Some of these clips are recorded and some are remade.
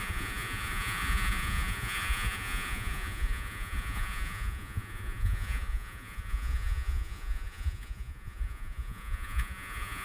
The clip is remade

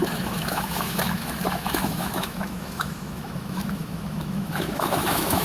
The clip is remade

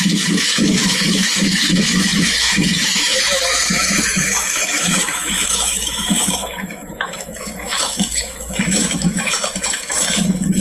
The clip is remade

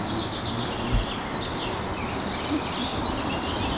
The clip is recorded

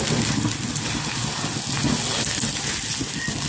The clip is recorded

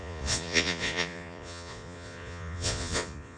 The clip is remade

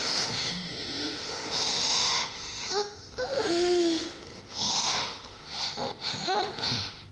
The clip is remade